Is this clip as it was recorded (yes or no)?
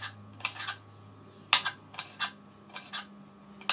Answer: yes